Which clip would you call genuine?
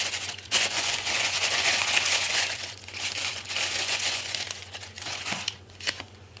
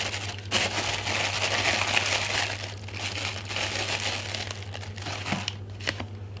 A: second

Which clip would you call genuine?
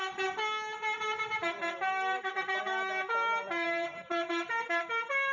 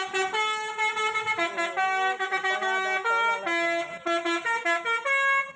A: second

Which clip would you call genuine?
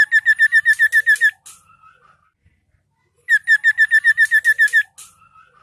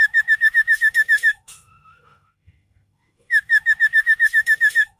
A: first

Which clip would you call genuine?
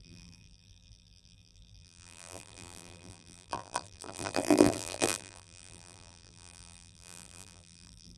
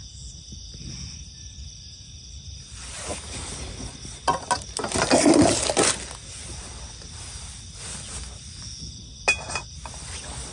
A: second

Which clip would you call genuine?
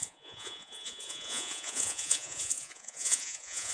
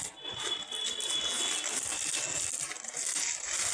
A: second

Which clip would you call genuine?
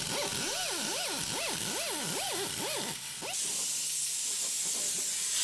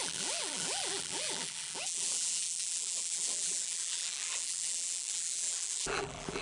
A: first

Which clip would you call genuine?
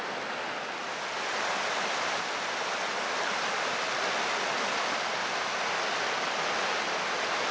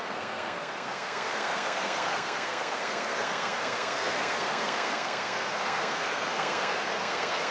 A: first